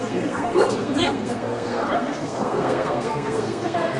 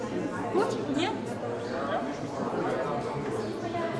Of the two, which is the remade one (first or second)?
first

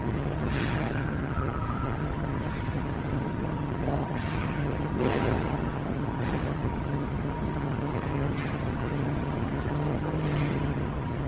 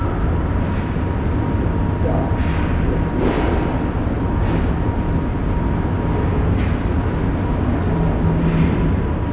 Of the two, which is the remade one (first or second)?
first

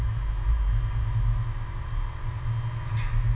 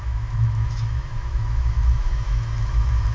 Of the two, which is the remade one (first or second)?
second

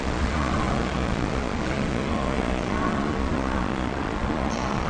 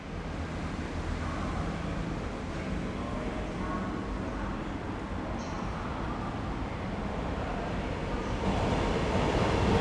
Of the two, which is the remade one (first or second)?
first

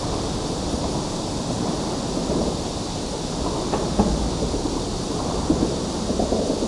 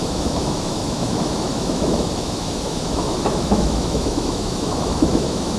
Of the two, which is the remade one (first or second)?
second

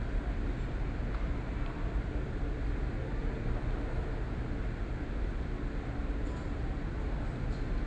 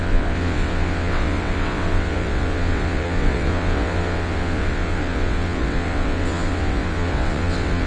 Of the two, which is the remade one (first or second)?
second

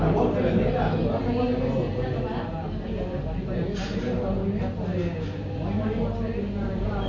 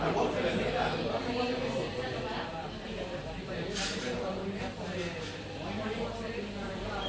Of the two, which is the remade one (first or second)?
second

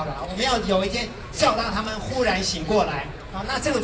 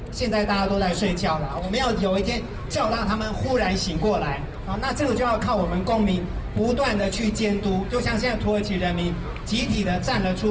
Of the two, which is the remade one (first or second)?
first